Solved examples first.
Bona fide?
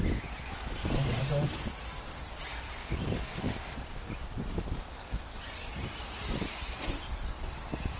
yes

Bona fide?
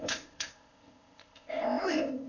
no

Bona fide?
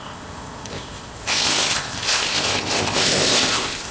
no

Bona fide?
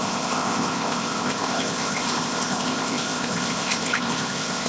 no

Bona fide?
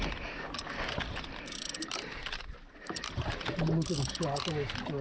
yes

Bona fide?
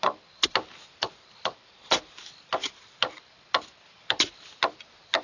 yes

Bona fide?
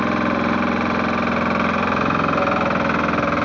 yes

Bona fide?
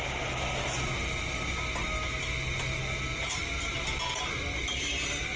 yes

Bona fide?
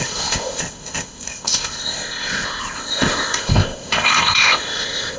no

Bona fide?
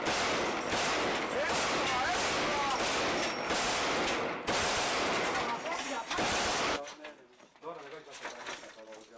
yes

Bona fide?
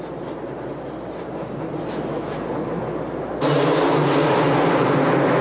yes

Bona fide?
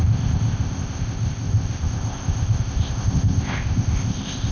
no